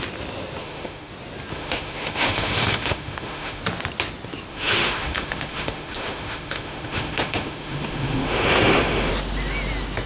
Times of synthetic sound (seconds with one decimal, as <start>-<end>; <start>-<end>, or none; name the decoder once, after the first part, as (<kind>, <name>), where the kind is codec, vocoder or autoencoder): 0.6-1.1 (autoencoder, DAC-VAE); 1.5-3.6; 4.5-9.1